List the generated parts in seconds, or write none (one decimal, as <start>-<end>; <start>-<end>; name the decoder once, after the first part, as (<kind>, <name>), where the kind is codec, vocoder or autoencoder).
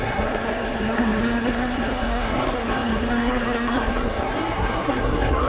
0.0-5.5 (codec, SNAC)